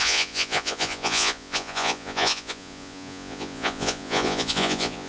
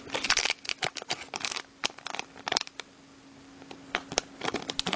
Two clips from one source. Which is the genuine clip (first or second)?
second